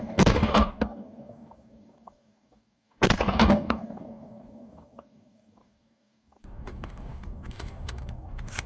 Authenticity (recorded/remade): remade